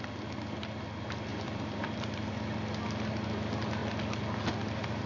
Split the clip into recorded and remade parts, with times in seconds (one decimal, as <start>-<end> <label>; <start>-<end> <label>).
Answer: 0.0-1.3 recorded; 1.3-2.3 remade; 2.3-5.1 recorded